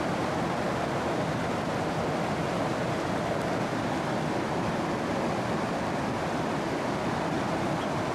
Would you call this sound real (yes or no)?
yes